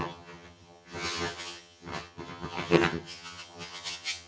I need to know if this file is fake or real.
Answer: fake